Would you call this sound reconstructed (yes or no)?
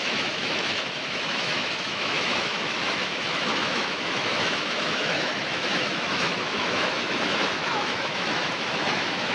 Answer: yes